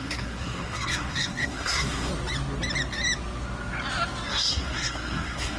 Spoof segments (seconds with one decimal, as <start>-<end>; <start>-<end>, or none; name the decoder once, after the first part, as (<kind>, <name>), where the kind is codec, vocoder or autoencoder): 0.0-2.1 (codec, SNAC); 4.3-5.6